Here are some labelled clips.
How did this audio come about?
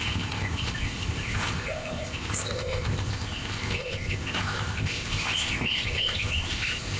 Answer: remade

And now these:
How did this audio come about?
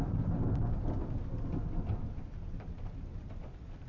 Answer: recorded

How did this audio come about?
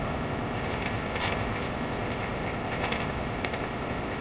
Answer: remade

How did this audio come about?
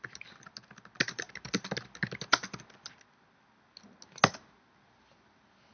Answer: recorded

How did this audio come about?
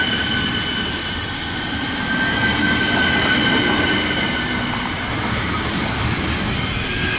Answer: recorded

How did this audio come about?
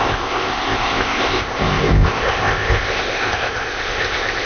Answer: remade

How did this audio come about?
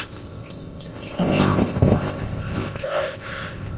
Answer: remade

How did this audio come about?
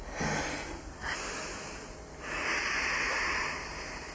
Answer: recorded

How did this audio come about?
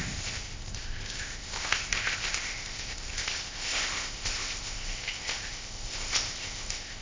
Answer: remade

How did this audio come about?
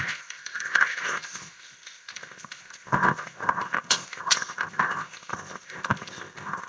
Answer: remade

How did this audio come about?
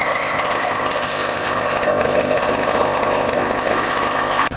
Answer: remade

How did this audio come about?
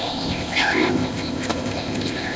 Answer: remade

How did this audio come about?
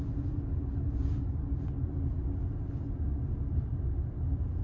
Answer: recorded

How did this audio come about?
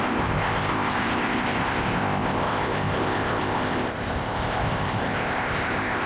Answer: remade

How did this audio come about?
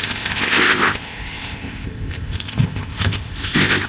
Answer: remade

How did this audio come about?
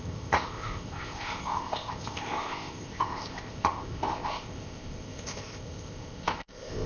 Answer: remade